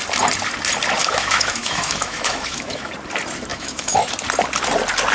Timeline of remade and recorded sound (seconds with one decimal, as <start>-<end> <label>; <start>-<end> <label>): 0.0-1.0 recorded; 1.0-2.9 remade; 2.9-3.5 recorded; 3.5-4.1 remade; 4.1-5.1 recorded